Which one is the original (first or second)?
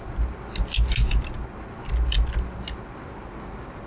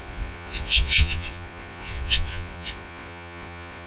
first